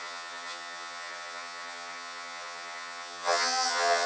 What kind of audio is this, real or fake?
fake